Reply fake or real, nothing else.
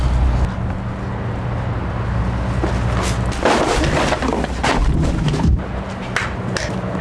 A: real